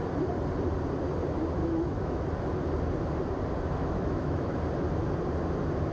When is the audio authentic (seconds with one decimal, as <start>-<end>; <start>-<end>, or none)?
0.0-1.6; 2.2-3.8; 4.6-5.9